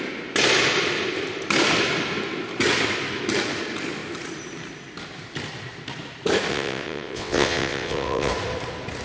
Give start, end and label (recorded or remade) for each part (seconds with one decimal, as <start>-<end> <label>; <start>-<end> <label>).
0.0-6.5 recorded; 6.5-8.3 remade; 8.3-9.0 recorded